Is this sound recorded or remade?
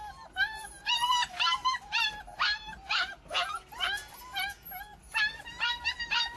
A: recorded